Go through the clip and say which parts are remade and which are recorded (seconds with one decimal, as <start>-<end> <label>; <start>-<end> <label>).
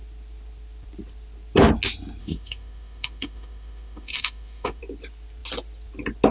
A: 0.0-2.2 recorded; 2.2-4.8 remade; 4.8-6.3 recorded